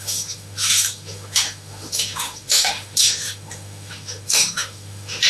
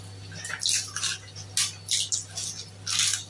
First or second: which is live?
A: second